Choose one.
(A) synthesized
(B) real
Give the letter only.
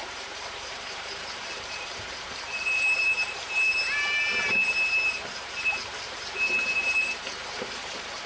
A